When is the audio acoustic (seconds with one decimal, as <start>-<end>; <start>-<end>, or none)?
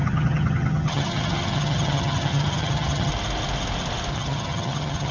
3.1-4.1